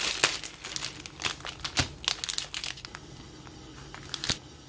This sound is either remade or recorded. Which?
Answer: recorded